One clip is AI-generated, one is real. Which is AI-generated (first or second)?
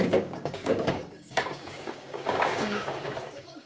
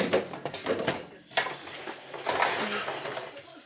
first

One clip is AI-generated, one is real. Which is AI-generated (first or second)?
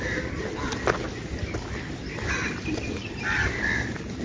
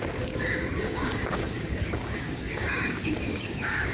second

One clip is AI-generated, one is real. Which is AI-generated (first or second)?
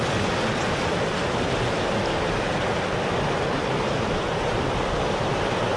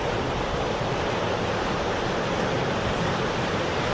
second